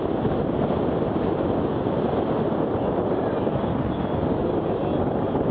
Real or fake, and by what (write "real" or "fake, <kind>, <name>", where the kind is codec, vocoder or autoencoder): real